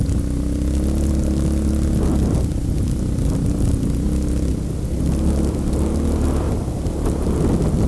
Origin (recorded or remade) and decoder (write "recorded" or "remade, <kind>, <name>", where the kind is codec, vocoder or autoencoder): recorded